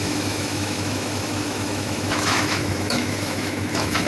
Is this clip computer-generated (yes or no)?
yes